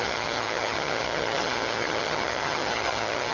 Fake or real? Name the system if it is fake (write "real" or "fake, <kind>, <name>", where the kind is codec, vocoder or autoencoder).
fake, vocoder, HiFi-GAN